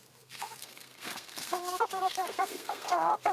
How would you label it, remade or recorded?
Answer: remade